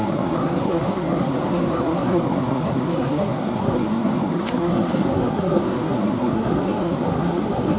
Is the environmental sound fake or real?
fake